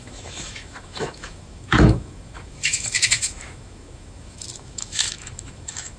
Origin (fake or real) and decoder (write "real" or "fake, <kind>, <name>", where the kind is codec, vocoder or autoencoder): fake, autoencoder, DAC-VAE